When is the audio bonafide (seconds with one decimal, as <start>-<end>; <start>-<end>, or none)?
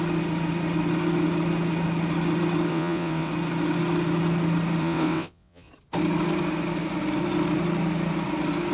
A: 0.0-2.7; 3.3-4.8; 5.7-8.7